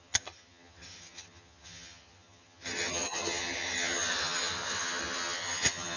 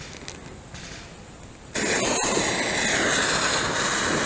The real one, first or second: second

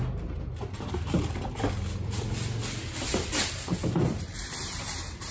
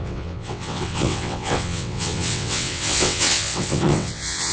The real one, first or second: first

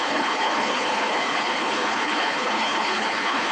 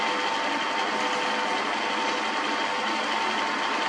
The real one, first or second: second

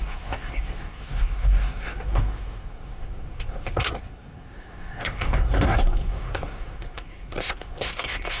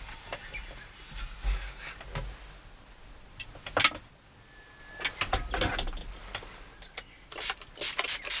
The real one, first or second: second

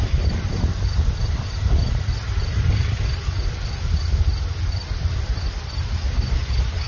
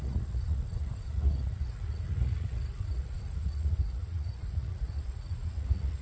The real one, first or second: first